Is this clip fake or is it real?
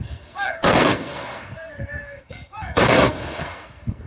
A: fake